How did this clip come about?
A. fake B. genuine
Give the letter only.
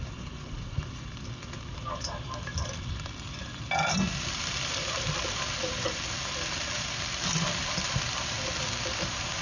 A